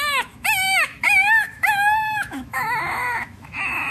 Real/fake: fake